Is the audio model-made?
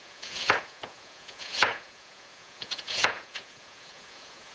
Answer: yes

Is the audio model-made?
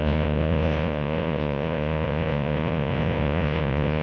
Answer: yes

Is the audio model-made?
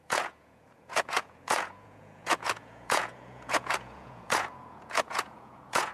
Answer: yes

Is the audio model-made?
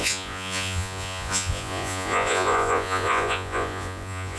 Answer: yes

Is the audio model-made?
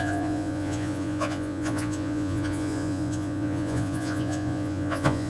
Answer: yes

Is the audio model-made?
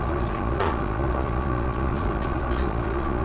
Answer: yes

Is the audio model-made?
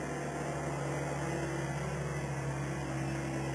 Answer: no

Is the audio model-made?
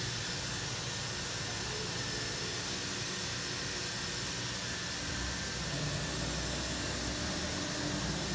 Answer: no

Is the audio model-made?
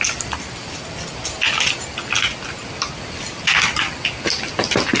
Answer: no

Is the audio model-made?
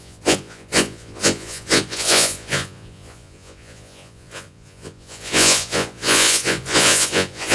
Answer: yes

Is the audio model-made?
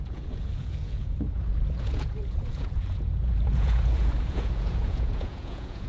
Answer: yes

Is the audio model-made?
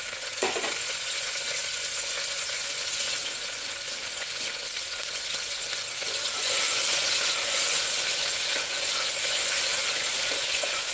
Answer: yes